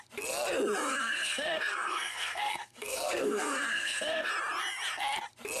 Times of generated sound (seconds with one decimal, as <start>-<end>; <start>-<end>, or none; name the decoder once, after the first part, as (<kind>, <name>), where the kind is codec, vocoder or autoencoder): 0.9-4.3 (codec, SNAC)